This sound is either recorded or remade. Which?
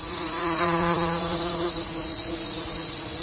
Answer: remade